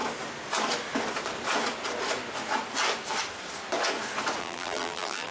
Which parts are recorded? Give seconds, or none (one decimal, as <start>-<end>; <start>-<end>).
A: 0.0-4.4